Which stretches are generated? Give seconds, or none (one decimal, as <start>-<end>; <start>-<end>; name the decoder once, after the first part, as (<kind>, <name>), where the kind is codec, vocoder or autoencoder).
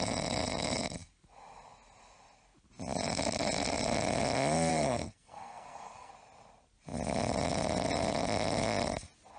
4.7-6.1 (codec, SNAC)